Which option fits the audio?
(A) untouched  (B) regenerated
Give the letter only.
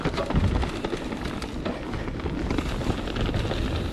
A